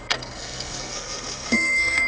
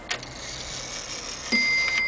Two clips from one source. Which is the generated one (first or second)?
first